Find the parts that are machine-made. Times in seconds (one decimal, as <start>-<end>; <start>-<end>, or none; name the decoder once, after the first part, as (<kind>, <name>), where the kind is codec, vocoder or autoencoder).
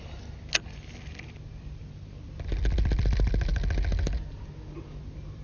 none